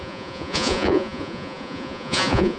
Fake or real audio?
fake